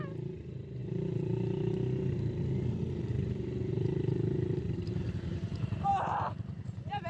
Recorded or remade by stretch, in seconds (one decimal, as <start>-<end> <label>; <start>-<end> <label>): 0.0-0.8 remade; 0.8-2.9 recorded; 2.9-7.1 remade